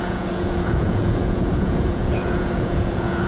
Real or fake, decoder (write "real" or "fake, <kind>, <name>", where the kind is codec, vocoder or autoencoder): fake, vocoder, Vocos